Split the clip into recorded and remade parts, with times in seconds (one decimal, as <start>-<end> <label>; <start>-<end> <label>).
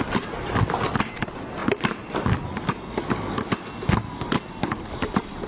0.0-5.5 recorded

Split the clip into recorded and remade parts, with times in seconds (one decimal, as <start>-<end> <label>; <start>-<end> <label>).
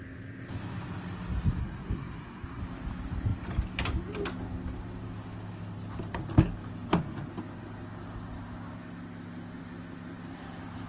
0.0-1.6 recorded; 1.6-2.6 remade; 2.6-10.9 recorded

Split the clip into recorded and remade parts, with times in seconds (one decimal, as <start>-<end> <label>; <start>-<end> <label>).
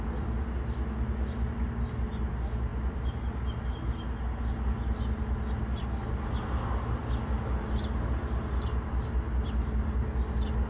0.0-10.7 recorded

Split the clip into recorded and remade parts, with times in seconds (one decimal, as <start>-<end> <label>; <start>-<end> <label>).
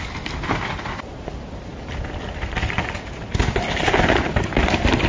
0.0-5.1 recorded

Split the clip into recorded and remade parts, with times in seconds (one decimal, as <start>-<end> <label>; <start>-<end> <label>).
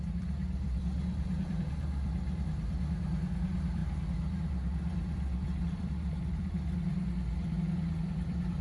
0.0-8.6 remade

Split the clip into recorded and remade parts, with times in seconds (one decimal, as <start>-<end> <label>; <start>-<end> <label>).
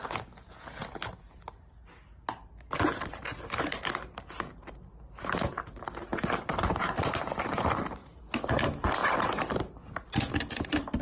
0.0-6.1 recorded; 6.1-8.2 remade; 8.2-11.0 recorded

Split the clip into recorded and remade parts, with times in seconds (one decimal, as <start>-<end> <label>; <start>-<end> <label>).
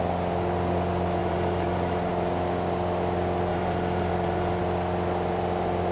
0.0-1.2 recorded; 1.2-2.1 remade; 2.1-3.5 recorded; 3.5-4.6 remade; 4.6-5.9 recorded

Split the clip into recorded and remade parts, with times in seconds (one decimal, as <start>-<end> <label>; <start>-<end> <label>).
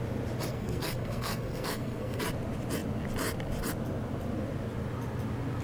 0.0-0.5 recorded; 0.5-2.2 remade; 2.2-5.6 recorded